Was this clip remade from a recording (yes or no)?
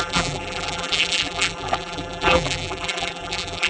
yes